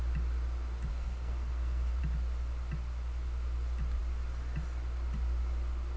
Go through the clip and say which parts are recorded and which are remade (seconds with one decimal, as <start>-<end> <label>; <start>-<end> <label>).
0.0-0.9 recorded; 0.9-2.0 remade; 2.0-6.0 recorded